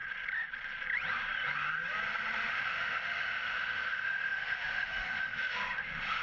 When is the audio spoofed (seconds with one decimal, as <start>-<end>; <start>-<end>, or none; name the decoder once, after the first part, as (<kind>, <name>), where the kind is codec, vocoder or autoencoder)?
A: 2.5-6.2 (autoencoder, DAC-VAE)